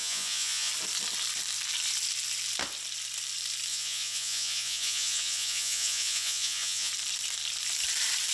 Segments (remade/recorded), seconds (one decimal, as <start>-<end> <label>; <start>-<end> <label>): 0.0-0.7 remade; 0.7-3.7 recorded; 3.7-6.9 remade; 6.9-8.3 recorded